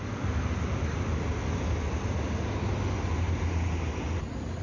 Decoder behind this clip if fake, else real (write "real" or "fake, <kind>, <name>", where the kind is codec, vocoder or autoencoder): real